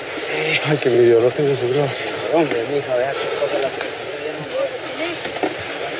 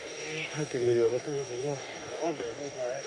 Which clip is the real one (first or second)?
first